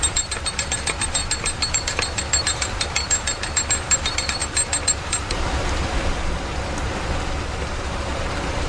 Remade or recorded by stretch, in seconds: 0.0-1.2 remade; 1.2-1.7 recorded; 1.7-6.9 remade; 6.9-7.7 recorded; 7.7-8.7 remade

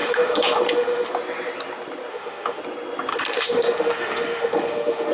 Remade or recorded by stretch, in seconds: 0.0-1.1 remade; 1.1-2.1 recorded; 2.1-2.6 remade; 2.6-3.1 recorded; 3.1-5.1 remade

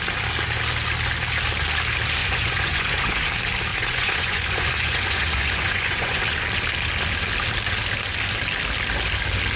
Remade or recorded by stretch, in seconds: 0.0-2.2 recorded; 2.2-3.2 remade; 3.2-3.7 recorded; 3.7-6.2 remade; 6.2-9.6 recorded